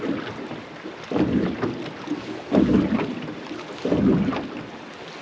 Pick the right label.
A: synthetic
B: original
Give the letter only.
B